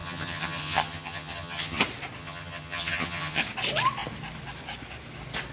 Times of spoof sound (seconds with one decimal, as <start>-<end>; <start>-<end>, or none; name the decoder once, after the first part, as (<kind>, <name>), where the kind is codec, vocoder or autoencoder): 0.0-1.8 (vocoder, HiFi-GAN); 2.2-3.4